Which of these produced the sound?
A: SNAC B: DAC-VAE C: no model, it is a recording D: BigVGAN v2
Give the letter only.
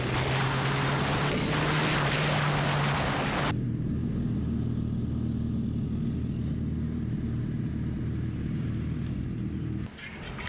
C